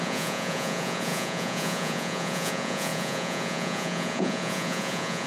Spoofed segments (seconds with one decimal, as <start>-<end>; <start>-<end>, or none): 0.0-5.3